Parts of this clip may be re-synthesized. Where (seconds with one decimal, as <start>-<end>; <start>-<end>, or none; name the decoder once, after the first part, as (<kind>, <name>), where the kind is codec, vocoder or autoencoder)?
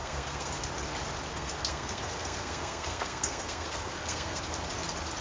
0.0-0.5 (codec, SNAC); 1.3-4.4